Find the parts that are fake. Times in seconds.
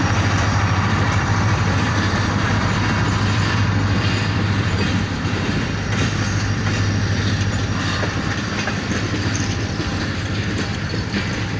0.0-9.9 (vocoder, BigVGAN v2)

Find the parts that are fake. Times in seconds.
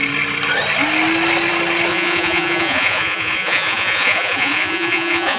1.9-5.4 (vocoder, Vocos)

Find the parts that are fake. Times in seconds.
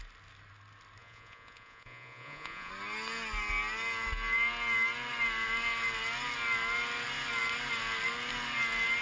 1.0-2.7 (vocoder, Vocos)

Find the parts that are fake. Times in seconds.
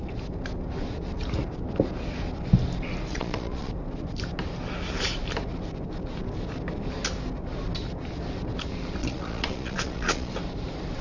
3.1-3.7 (vocoder, Vocos); 9.0-10.3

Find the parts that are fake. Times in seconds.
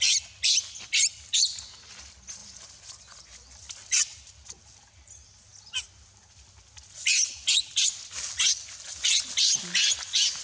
none